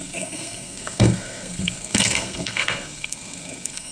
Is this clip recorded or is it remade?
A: remade